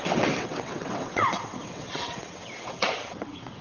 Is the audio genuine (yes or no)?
no